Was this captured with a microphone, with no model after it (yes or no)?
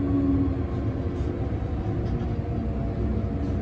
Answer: yes